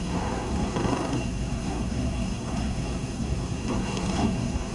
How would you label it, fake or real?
fake